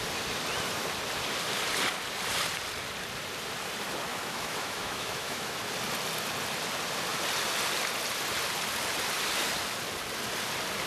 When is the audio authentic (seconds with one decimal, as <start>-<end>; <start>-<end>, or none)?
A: 0.0-4.1; 5.6-10.9